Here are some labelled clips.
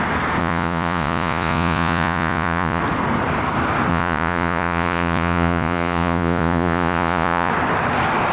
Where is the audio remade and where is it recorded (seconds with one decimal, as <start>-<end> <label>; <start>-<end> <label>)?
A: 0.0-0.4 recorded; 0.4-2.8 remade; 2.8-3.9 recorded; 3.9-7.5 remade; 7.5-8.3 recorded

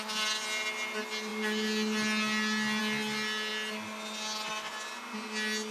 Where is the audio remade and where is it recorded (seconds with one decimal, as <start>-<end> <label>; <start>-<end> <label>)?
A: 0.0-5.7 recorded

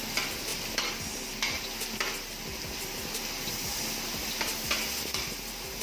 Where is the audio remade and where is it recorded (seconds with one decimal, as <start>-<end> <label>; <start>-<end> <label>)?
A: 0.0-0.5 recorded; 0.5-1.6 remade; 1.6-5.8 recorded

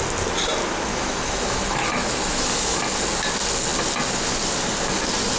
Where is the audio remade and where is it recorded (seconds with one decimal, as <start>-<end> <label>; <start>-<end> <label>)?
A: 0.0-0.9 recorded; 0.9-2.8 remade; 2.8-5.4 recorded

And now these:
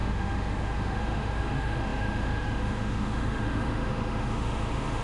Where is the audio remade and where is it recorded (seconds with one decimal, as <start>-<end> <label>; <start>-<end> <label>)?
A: 0.0-5.0 remade

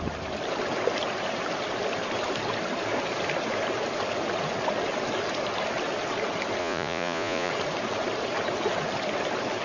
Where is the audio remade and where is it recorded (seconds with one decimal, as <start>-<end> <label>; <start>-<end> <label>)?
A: 0.0-6.6 recorded; 6.6-7.5 remade; 7.5-9.6 recorded